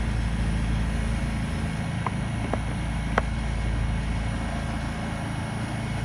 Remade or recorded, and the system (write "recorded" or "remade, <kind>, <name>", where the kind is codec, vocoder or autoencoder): recorded